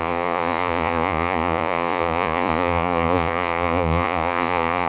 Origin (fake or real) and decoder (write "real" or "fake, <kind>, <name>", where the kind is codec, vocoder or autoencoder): fake, vocoder, Vocos